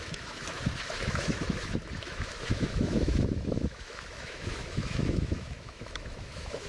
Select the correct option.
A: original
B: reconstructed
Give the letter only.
B